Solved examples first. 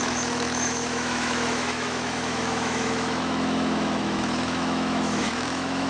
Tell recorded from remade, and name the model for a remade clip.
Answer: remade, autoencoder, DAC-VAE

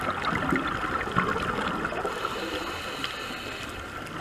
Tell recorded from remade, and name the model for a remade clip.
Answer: recorded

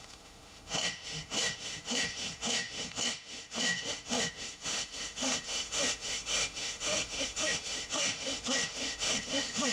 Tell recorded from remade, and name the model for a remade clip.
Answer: remade, autoencoder, DAC-VAE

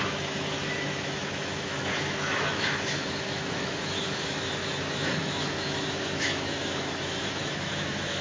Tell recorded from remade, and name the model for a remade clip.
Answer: remade, autoencoder, DAC-VAE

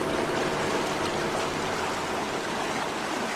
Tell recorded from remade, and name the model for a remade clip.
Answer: recorded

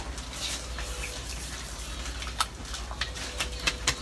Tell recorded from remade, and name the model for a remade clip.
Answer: recorded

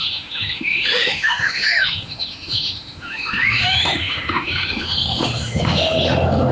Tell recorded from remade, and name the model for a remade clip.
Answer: remade, autoencoder, DAC-VAE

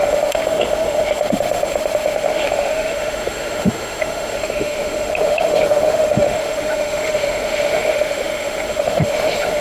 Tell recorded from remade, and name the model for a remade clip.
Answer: remade, autoencoder, DAC-VAE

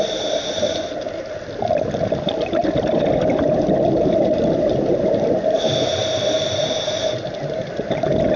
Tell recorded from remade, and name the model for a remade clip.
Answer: recorded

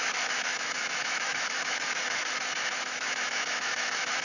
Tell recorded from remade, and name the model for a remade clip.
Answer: remade, autoencoder, DAC-VAE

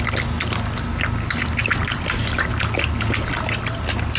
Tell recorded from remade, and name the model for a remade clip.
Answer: recorded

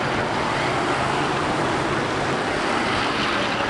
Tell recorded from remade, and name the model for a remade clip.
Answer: recorded